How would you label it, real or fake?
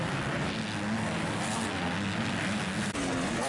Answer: real